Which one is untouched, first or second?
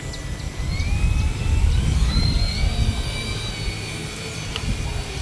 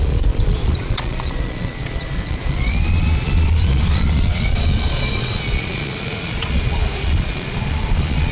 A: first